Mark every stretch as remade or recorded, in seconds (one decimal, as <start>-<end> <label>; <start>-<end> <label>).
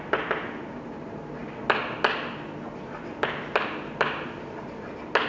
0.0-5.3 recorded